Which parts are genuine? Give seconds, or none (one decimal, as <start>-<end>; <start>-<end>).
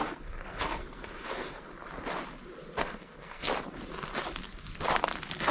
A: 1.7-2.8; 3.5-5.5